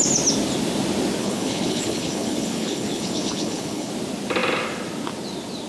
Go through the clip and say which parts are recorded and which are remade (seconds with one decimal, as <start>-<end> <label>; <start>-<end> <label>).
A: 0.0-1.2 recorded; 1.2-3.9 remade; 3.9-5.7 recorded